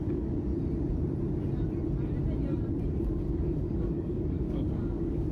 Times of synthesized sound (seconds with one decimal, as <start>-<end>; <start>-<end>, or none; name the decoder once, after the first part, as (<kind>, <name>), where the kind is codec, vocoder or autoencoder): 0.0-0.5 (codec, DAC); 3.0-5.3